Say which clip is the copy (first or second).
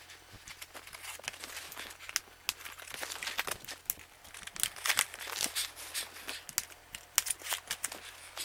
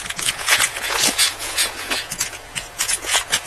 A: second